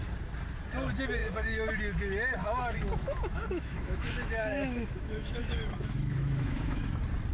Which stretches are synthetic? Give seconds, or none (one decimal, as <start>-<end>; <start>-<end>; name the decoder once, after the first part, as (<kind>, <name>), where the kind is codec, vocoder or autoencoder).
1.2-1.7 (autoencoder, DAC-VAE); 2.4-6.8